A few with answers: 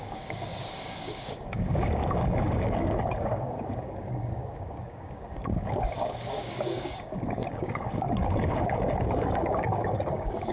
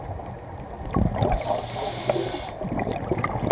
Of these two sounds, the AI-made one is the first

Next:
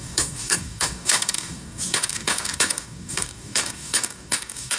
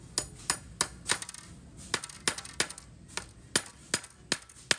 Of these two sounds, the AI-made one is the first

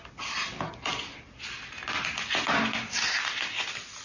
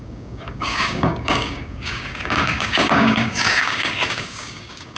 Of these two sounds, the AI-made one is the second